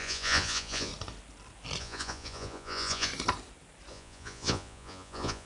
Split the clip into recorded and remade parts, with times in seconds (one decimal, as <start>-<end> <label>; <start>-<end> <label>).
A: 0.0-0.9 remade; 0.9-1.8 recorded; 1.8-3.1 remade; 3.1-3.9 recorded; 3.9-5.5 remade